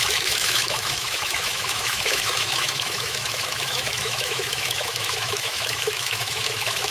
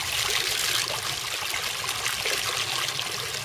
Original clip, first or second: second